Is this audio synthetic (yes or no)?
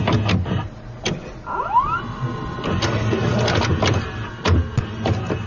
no